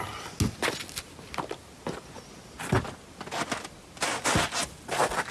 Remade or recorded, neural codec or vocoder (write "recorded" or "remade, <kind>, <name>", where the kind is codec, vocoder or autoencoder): recorded